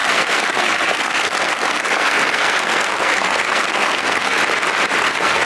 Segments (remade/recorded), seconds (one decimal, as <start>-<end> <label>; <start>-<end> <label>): 0.0-4.4 remade; 4.4-5.0 recorded; 5.0-5.4 remade